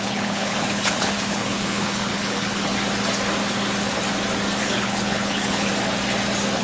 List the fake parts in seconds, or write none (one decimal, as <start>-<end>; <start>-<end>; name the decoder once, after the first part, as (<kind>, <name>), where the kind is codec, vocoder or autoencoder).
0.0-2.7 (codec, HILCodec); 4.6-5.7